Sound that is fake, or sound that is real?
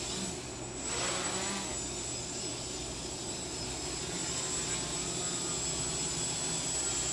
real